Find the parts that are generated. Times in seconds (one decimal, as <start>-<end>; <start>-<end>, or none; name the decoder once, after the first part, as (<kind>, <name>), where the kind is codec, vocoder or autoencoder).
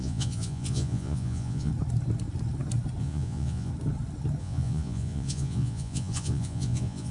0.0-1.7 (vocoder, Vocos); 3.0-3.7; 4.4-7.1